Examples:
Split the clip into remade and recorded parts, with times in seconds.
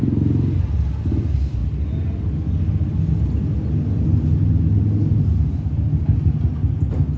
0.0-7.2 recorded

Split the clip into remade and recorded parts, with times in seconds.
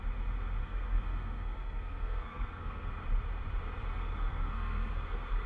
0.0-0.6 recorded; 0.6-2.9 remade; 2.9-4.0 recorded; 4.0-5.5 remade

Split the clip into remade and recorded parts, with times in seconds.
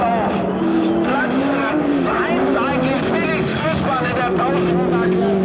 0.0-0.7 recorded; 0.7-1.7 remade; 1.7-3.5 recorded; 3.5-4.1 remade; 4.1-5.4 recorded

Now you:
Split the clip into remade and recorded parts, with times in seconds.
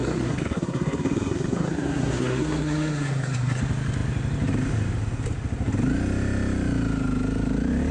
0.0-3.6 remade; 3.6-7.9 recorded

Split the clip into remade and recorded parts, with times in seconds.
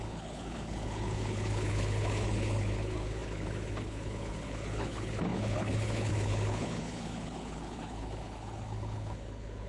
0.0-9.7 remade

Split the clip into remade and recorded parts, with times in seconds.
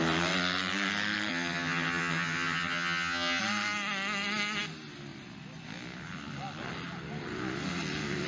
0.0-1.3 recorded; 1.3-3.4 remade; 3.4-8.3 recorded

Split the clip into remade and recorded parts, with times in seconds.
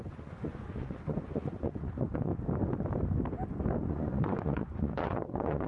0.0-2.3 remade; 2.3-3.8 recorded; 3.8-5.7 remade